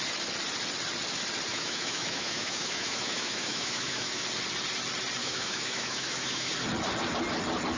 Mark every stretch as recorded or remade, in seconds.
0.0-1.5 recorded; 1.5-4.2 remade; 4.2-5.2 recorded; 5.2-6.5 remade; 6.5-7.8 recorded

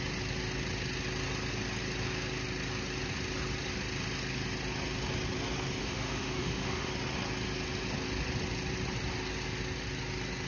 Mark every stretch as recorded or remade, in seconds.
0.0-5.8 recorded; 5.8-6.9 remade; 6.9-10.5 recorded

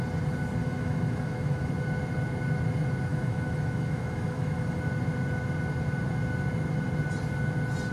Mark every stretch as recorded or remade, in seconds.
0.0-0.6 recorded; 0.6-1.7 remade; 1.7-3.1 recorded; 3.1-4.8 remade; 4.8-7.9 recorded

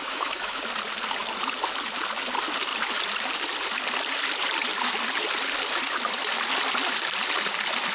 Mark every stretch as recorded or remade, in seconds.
0.0-0.6 remade; 0.6-7.9 recorded